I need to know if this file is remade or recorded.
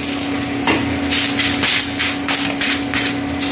recorded